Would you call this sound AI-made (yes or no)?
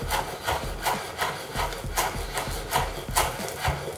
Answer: no